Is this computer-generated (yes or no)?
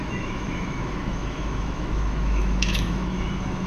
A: yes